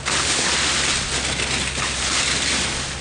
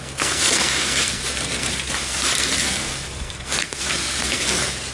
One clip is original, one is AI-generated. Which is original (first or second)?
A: first